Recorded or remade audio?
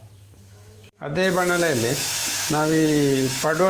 remade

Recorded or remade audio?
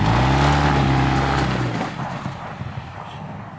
recorded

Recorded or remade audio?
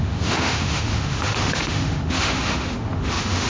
remade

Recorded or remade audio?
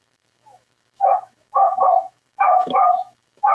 remade